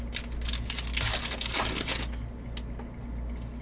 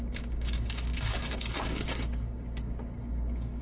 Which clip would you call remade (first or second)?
second